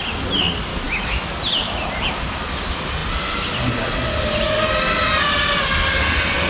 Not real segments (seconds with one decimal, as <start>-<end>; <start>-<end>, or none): 0.7-1.3